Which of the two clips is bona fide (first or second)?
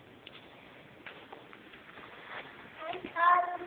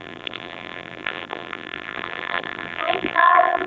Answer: first